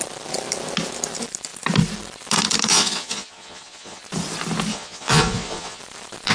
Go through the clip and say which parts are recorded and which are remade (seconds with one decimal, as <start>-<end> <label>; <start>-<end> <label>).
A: 0.0-2.7 recorded; 2.7-4.0 remade; 4.0-4.7 recorded; 4.7-5.8 remade; 5.8-6.3 recorded